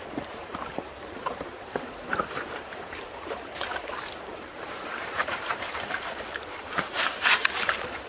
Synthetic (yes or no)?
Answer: yes